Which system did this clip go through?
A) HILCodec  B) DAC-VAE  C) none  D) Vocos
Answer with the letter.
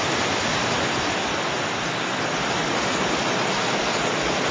C